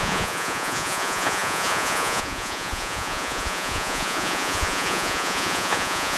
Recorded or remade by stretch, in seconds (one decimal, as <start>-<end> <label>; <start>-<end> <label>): 0.0-6.2 remade